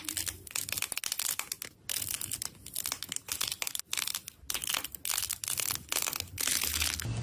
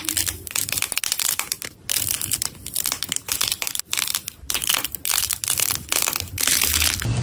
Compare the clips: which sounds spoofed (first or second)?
second